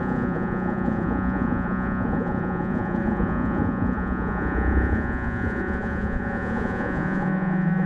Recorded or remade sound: remade